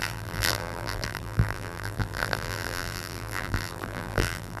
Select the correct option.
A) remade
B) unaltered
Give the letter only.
A